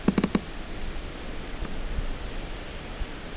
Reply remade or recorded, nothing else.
remade